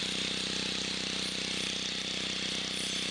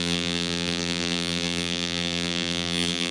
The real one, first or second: first